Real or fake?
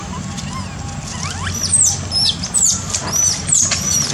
real